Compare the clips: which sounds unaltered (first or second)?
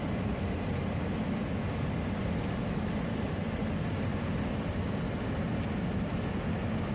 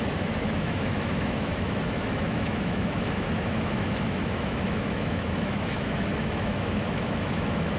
first